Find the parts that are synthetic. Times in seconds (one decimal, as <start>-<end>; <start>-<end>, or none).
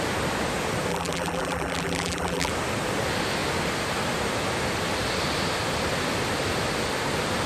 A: 0.9-2.5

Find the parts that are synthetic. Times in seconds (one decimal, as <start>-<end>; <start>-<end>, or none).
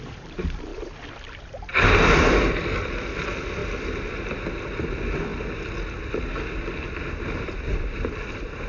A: none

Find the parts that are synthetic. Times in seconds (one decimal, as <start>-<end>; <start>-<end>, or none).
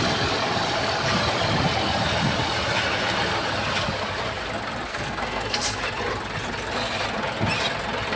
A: 4.9-5.8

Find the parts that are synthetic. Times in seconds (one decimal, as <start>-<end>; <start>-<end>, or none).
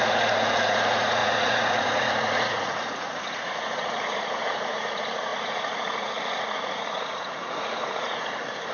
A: 0.0-8.7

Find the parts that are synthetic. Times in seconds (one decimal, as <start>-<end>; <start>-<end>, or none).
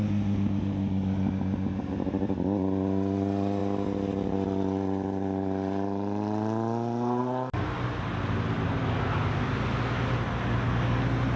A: none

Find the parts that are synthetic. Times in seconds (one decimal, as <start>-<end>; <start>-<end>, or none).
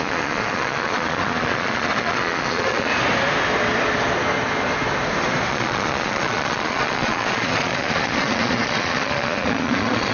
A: 0.0-2.9; 5.5-10.1